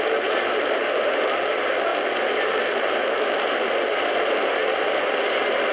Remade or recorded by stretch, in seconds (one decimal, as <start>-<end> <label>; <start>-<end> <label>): 0.0-5.7 recorded